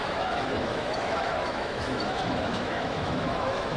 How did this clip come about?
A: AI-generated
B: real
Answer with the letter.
A